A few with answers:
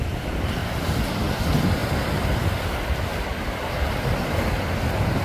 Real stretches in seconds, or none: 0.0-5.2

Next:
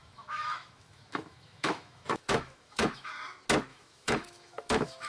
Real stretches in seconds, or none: 3.1-3.7

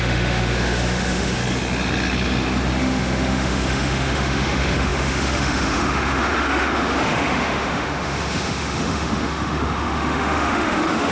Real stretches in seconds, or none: 1.4-2.8

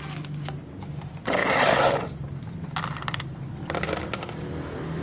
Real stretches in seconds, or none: 0.0-5.0